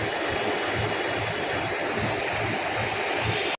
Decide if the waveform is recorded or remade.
recorded